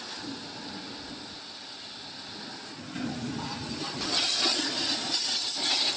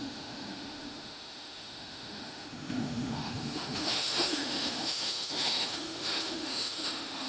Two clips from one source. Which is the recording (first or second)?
first